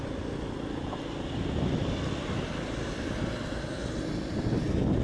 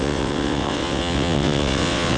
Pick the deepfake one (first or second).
second